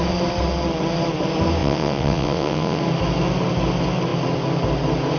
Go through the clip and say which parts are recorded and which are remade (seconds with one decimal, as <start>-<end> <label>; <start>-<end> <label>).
0.0-1.6 recorded; 1.6-2.8 remade; 2.8-5.2 recorded